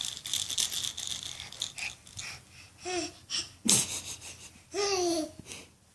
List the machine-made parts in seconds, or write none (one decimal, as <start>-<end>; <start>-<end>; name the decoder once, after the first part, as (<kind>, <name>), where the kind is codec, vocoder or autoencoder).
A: none